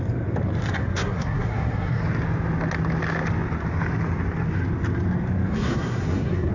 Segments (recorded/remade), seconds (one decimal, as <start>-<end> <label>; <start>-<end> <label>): 0.0-0.8 recorded; 0.8-2.0 remade; 2.0-5.5 recorded; 5.5-6.5 remade